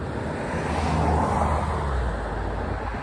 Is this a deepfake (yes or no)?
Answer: no